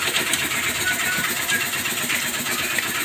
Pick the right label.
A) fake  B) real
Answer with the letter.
B